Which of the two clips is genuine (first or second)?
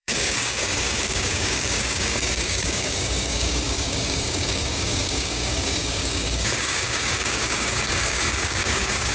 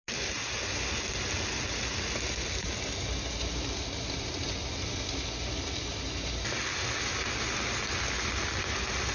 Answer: second